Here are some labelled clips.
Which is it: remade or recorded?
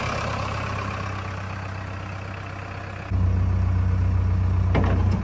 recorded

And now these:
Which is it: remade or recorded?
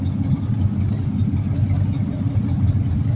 recorded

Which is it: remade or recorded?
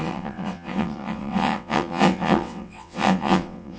remade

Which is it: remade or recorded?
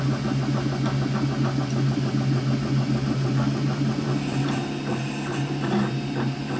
recorded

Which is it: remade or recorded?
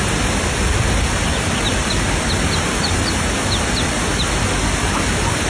recorded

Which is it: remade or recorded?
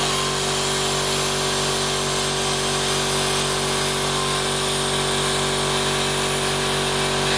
recorded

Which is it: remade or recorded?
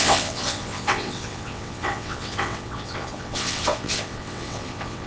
remade